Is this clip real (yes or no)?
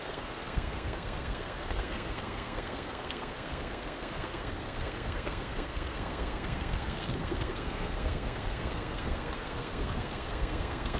no